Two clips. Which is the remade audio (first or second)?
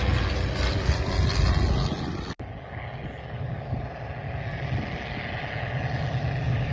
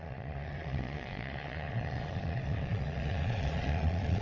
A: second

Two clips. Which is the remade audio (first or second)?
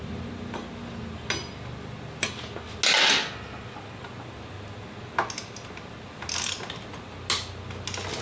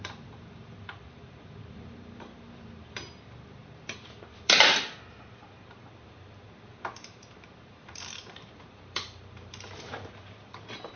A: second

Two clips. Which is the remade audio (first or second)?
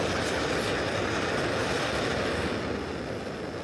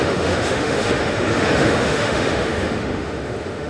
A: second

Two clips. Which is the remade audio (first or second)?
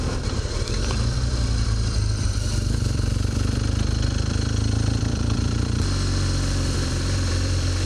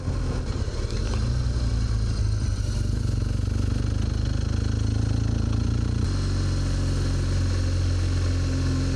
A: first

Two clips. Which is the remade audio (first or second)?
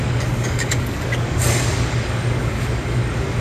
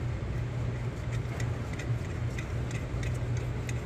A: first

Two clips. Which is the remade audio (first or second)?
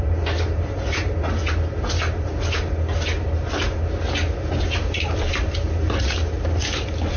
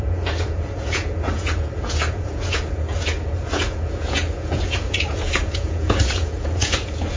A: second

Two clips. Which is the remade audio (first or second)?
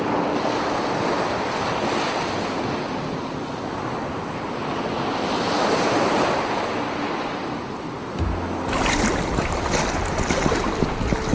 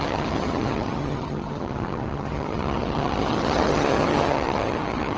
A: second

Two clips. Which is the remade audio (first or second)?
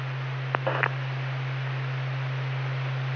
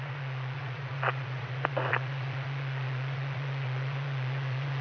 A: second